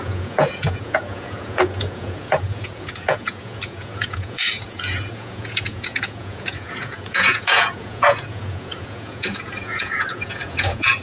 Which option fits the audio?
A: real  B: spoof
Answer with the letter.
B